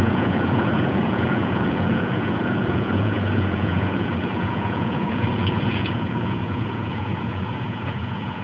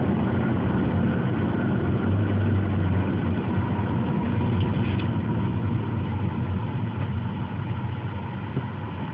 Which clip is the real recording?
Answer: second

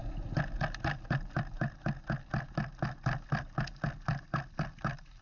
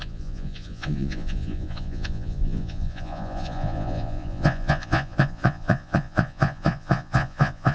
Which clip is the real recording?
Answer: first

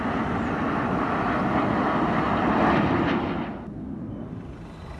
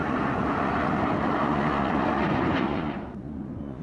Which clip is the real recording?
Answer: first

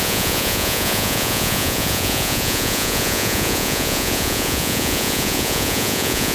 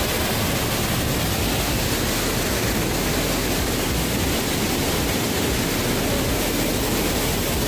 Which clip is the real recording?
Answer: second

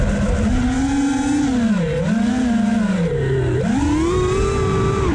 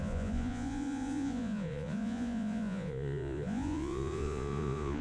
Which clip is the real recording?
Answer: first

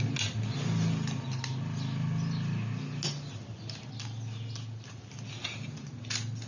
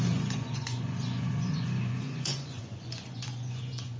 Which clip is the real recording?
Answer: first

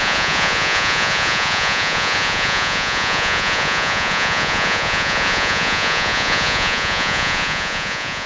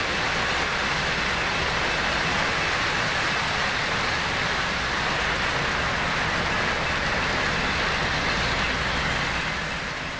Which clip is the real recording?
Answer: second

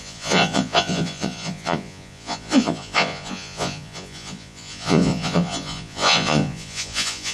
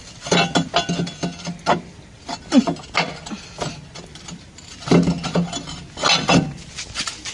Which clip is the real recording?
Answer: second